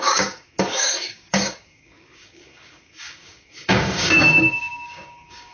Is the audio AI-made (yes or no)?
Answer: yes